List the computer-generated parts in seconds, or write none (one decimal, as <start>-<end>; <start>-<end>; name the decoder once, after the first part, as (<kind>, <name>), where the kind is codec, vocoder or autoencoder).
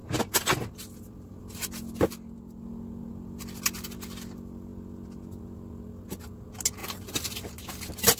none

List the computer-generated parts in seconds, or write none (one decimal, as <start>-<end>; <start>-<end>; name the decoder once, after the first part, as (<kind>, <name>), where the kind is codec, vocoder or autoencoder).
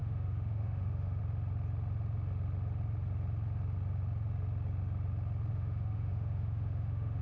0.0-1.2 (autoencoder, DAC-VAE); 5.5-7.2